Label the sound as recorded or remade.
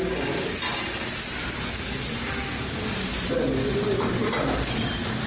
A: recorded